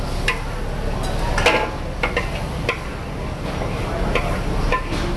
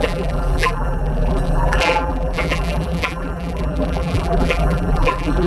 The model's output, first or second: second